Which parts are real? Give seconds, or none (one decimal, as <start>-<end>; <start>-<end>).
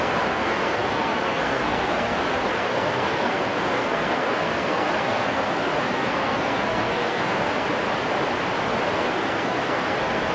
7.7-8.9